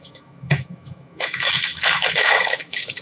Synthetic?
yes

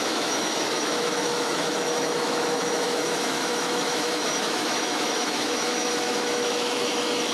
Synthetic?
yes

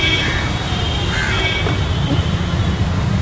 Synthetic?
no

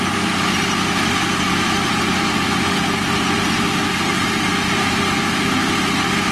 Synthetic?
no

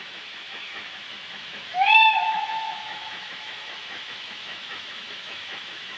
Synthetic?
yes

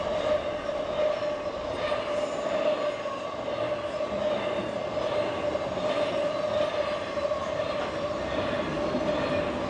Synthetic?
no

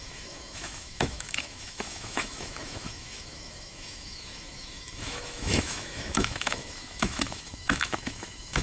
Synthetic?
yes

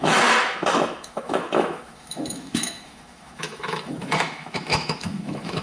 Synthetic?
yes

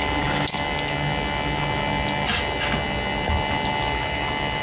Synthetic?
no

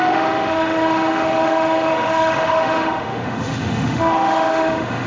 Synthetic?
yes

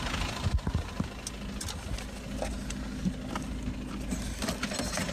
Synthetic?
no